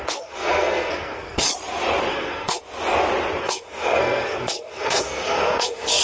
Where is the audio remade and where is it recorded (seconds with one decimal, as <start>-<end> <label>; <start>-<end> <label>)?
0.0-1.5 remade; 1.5-2.1 recorded; 2.1-2.6 remade; 2.6-3.4 recorded; 3.4-6.0 remade